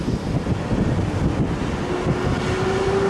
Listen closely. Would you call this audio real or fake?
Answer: real